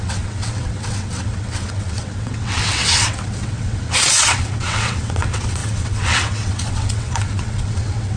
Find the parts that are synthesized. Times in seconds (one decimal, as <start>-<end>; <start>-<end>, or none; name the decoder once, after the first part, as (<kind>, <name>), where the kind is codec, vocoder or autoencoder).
0.0-8.2 (vocoder, WaveNeXt)